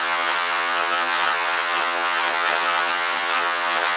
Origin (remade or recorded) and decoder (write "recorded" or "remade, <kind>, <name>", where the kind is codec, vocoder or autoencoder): remade, vocoder, HiFi-GAN